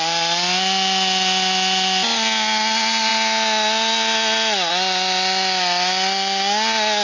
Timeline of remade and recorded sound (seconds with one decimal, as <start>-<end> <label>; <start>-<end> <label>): 0.0-7.0 recorded